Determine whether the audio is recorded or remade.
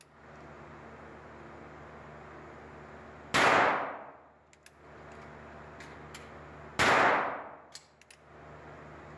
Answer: recorded